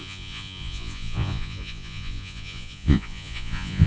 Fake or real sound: fake